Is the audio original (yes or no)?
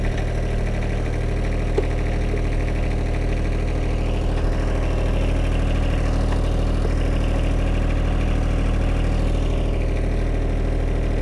yes